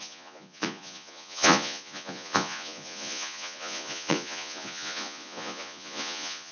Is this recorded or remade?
remade